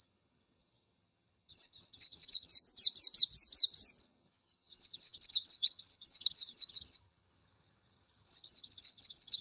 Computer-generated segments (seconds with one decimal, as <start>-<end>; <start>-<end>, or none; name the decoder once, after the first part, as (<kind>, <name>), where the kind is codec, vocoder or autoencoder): 0.0-2.5 (vocoder, HiFi-GAN); 4.0-9.4